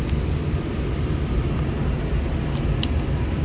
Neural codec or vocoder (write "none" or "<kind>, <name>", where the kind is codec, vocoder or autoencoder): none